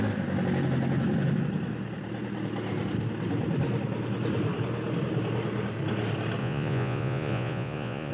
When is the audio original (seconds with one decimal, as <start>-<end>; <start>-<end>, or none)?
0.0-6.4